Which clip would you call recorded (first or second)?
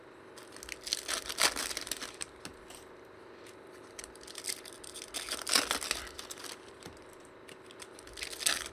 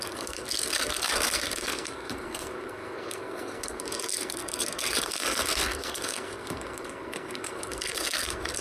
first